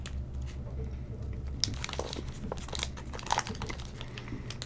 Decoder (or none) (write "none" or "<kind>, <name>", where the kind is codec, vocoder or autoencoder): none